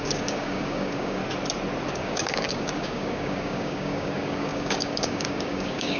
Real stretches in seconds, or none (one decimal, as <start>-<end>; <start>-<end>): 1.2-1.9